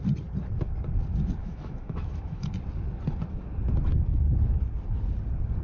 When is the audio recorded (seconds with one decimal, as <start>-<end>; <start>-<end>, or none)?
0.0-1.4; 2.5-5.6